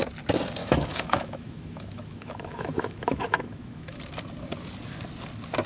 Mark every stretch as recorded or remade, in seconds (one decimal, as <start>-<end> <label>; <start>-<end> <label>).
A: 0.0-0.6 recorded; 0.6-4.0 remade; 4.0-5.7 recorded